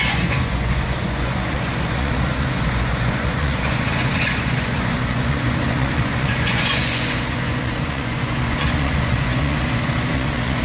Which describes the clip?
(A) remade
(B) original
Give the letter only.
A